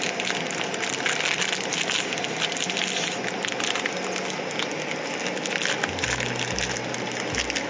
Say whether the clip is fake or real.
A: real